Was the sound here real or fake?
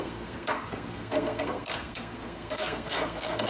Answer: fake